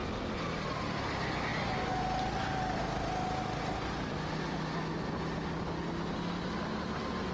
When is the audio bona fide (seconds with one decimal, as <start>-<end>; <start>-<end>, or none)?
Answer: 0.0-7.3